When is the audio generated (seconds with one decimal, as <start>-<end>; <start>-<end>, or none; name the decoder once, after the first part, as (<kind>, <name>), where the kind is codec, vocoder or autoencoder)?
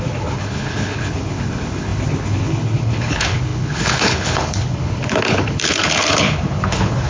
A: 0.0-7.1 (codec, HILCodec)